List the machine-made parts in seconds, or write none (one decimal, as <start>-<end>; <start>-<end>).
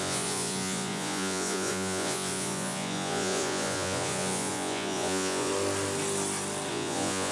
0.0-5.5; 6.7-7.3